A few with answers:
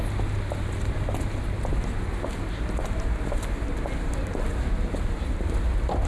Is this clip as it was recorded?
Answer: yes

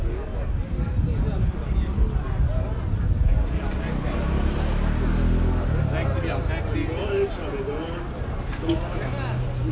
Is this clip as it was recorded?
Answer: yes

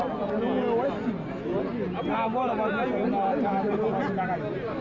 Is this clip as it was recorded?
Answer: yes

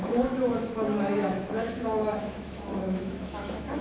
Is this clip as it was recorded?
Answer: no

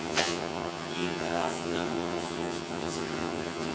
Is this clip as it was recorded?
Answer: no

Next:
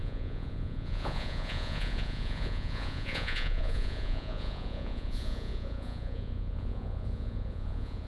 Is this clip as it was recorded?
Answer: no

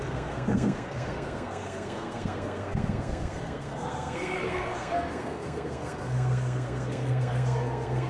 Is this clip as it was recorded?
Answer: no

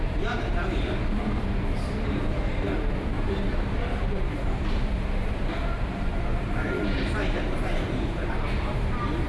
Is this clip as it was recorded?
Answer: no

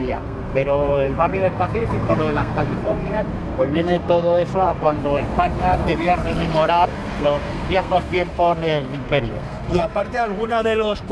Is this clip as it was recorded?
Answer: no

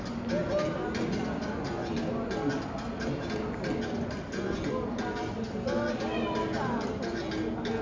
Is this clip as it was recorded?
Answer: yes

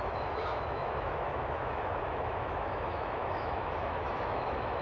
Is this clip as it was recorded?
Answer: no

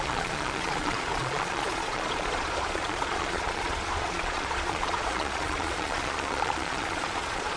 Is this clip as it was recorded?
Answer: no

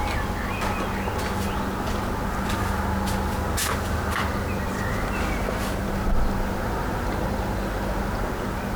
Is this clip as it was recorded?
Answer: yes